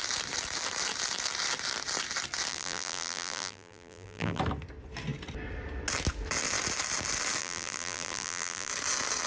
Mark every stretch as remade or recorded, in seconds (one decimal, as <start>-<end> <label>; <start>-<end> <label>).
0.0-2.5 recorded; 2.5-4.4 remade; 4.4-7.4 recorded; 7.4-8.7 remade; 8.7-9.3 recorded